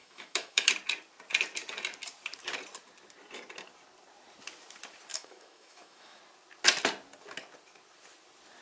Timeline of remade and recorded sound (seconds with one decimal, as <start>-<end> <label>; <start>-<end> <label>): 0.0-0.7 remade; 0.7-5.1 recorded; 5.1-6.2 remade; 6.2-8.6 recorded

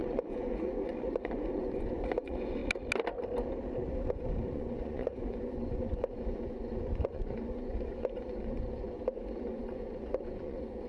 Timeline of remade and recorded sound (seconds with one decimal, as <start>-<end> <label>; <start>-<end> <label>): 0.0-2.6 remade; 2.6-3.9 recorded; 3.9-10.9 remade

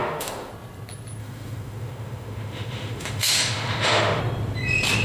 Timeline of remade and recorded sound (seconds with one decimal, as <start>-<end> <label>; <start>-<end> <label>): 0.0-0.5 remade; 0.5-1.2 recorded; 1.2-4.2 remade; 4.2-5.0 recorded

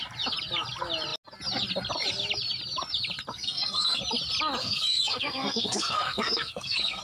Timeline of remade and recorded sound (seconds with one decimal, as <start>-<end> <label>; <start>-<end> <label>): 0.0-3.3 recorded; 3.3-4.0 remade; 4.0-4.6 recorded; 4.6-7.0 remade